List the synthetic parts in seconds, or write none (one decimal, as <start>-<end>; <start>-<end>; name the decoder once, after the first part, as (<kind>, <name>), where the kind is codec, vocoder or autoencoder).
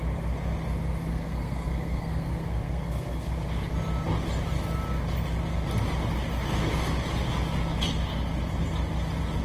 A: 1.1-3.3 (codec, SNAC)